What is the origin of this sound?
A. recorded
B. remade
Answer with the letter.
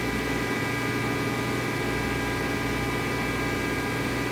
A